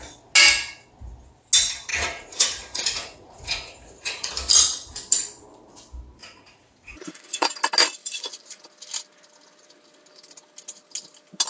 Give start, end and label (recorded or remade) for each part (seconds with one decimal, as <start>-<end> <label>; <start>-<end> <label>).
0.0-1.9 recorded; 1.9-4.3 remade; 4.3-6.2 recorded; 6.2-7.5 remade; 7.5-8.0 recorded; 8.0-8.6 remade; 8.6-11.5 recorded